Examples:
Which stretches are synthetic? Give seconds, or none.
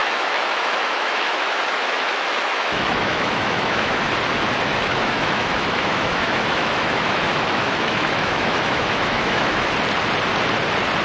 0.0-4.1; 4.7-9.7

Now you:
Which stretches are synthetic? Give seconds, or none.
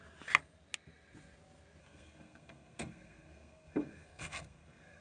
1.8-5.0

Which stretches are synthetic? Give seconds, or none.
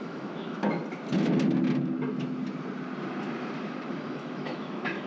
0.0-0.8; 3.9-5.1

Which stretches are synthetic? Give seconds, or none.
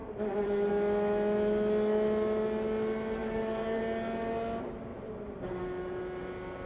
0.0-0.7; 3.2-3.8; 4.9-5.6